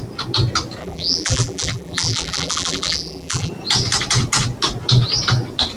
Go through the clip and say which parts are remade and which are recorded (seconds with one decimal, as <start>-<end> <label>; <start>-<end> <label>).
0.0-0.8 recorded; 0.8-3.5 remade; 3.5-5.8 recorded